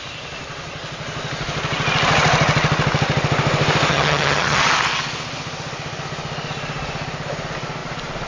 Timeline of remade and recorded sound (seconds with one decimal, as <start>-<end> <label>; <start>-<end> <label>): 0.0-3.9 recorded; 3.9-4.6 remade; 4.6-8.3 recorded